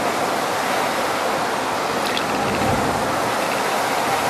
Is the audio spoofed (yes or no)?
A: no